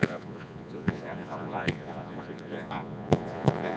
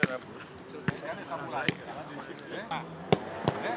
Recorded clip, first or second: second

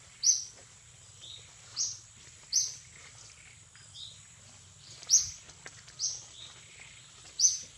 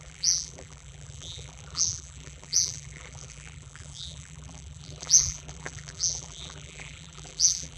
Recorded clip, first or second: first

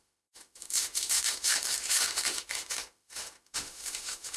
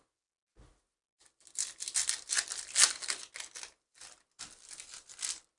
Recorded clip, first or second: second